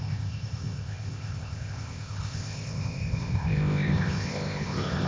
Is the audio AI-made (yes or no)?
yes